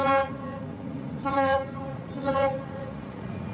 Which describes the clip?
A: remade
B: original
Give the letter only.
A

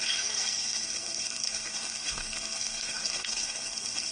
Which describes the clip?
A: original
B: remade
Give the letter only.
B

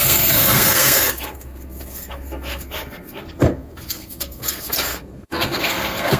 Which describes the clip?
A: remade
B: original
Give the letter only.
A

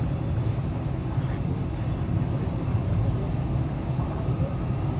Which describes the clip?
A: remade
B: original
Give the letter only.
B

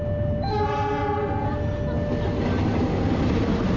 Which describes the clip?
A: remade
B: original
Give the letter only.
B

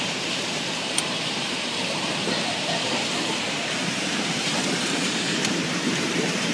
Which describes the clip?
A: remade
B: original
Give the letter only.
A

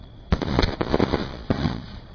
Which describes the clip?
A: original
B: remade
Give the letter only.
B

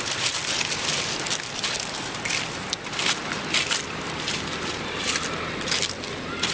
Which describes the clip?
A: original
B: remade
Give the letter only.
A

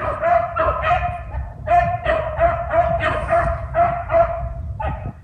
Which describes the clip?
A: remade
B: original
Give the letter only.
A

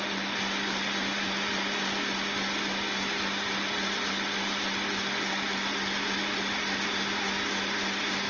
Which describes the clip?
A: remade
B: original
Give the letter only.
B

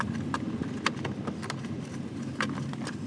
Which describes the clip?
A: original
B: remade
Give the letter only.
A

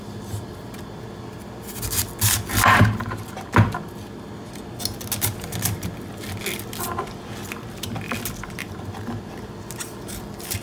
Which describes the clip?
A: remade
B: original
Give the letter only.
B